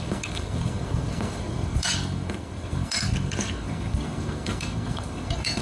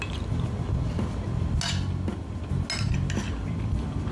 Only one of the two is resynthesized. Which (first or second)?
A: first